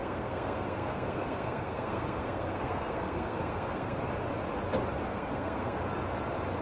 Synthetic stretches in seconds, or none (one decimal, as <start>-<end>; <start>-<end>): 0.0-4.0; 5.1-5.8